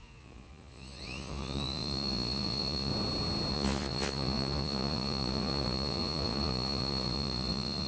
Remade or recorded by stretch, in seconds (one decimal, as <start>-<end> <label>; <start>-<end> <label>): 0.0-2.9 remade; 2.9-3.5 recorded; 3.5-7.9 remade